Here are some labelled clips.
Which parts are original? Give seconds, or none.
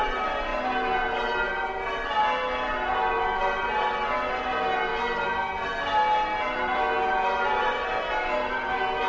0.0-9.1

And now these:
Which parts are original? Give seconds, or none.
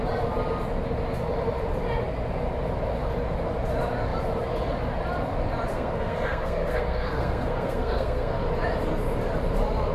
0.0-5.7; 8.4-9.9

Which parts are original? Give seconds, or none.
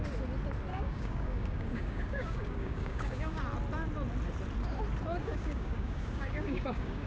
0.0-0.7; 3.4-5.2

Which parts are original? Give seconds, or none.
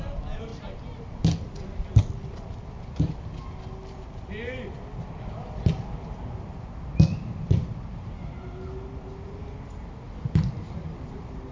0.0-11.5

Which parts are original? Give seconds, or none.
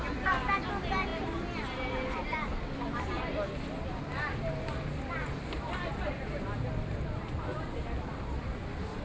0.0-9.0